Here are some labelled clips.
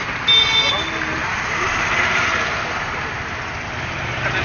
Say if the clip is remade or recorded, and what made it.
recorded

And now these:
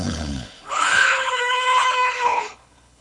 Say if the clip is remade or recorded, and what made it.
remade, codec, HILCodec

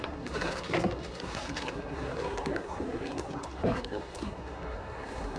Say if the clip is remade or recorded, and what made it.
remade, codec, SNAC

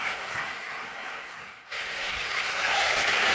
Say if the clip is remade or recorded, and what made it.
remade, codec, SNAC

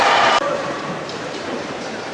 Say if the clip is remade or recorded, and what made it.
remade, vocoder, BigVGAN v2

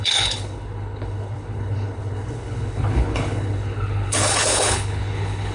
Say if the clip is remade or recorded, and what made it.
remade, codec, HILCodec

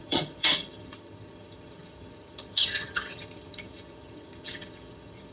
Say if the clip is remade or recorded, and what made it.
remade, vocoder, HiFi-GAN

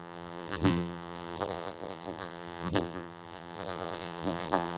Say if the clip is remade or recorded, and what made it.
remade, vocoder, BigVGAN v2